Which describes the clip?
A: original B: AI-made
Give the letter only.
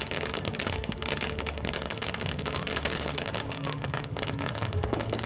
B